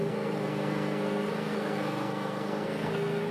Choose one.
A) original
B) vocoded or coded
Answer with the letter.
B